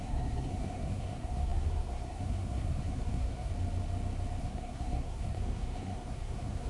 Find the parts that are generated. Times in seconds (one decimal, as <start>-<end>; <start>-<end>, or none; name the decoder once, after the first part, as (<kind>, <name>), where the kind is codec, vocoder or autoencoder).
0.0-3.5 (codec, SNAC); 4.4-6.7